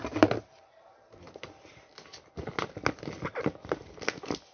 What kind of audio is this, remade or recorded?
recorded